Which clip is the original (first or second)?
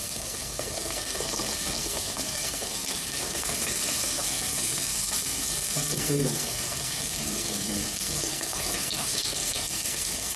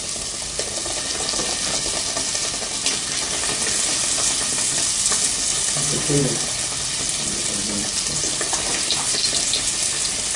second